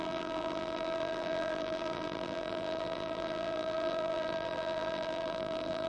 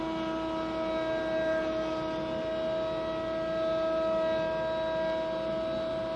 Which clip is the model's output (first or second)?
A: first